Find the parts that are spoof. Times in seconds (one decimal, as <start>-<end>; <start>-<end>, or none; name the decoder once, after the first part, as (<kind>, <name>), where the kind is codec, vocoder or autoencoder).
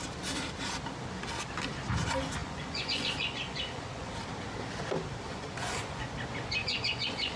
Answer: 2.4-4.1 (vocoder, Vocos); 5.3-6.1; 6.6-7.4